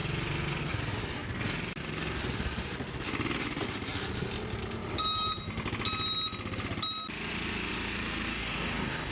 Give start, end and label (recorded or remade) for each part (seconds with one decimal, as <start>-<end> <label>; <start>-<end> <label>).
0.0-8.3 recorded; 8.3-9.1 remade